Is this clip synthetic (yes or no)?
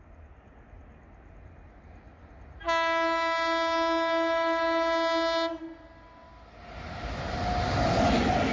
no